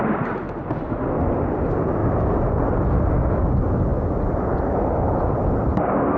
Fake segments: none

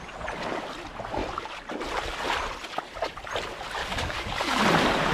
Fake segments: 3.8-4.6 (codec, DAC)

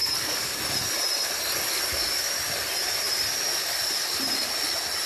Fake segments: 0.0-0.6 (codec, DAC)

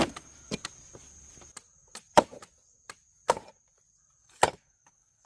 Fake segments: 4.2-5.3 (codec, DAC)